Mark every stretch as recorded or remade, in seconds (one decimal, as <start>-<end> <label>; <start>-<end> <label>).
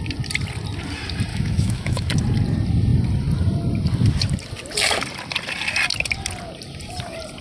0.0-1.3 recorded; 1.3-2.1 remade; 2.1-7.4 recorded